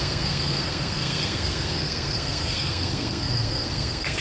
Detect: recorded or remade remade